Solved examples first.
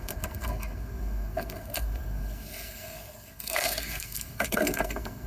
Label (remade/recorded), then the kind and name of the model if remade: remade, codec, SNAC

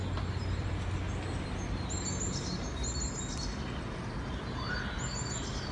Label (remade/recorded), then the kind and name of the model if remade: recorded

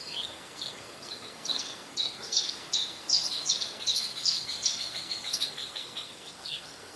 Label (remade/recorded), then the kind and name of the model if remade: remade, codec, SNAC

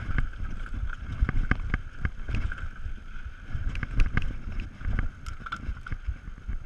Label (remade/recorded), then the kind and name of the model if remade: recorded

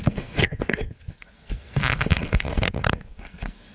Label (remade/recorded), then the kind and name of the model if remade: remade, codec, SNAC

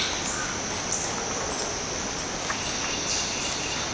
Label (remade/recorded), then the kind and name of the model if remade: recorded